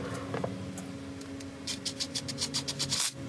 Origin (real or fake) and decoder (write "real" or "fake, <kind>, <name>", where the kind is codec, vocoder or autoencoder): real